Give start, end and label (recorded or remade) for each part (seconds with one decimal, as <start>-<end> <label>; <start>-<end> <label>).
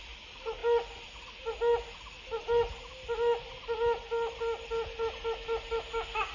0.0-6.3 recorded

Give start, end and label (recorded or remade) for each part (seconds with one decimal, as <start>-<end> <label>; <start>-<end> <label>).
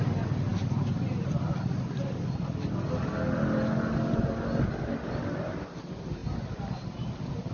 0.0-7.5 recorded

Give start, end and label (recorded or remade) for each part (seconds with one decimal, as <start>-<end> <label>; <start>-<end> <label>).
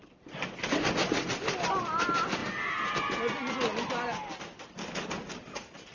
0.0-5.9 recorded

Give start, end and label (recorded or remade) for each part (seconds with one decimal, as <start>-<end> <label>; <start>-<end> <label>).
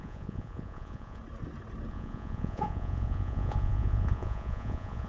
0.0-1.2 remade; 1.2-1.9 recorded; 1.9-5.1 remade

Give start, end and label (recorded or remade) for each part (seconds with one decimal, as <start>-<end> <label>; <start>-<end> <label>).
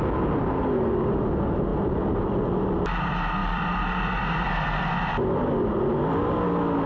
0.0-1.7 recorded; 1.7-2.3 remade; 2.3-3.4 recorded; 3.4-6.2 remade; 6.2-6.9 recorded